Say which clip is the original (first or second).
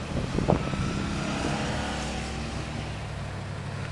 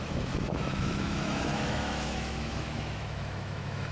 first